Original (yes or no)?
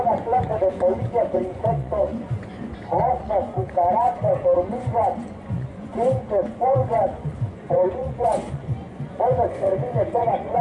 no